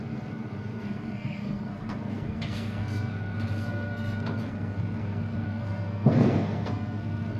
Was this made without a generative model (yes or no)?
no